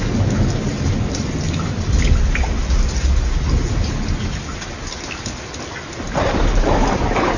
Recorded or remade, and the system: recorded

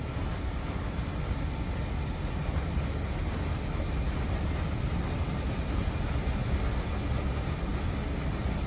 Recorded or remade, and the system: recorded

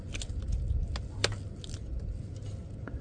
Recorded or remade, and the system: recorded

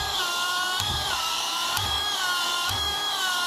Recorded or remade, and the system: remade, codec, DAC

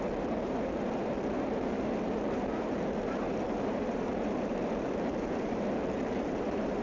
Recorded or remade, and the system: remade, vocoder, BigVGAN v2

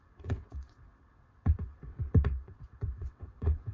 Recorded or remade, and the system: remade, vocoder, WaveNeXt